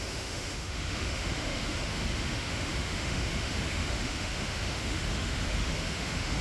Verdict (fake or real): fake